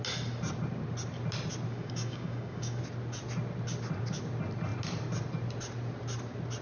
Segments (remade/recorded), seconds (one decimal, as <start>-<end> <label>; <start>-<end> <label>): 0.0-1.7 recorded; 1.7-2.8 remade; 2.8-6.6 recorded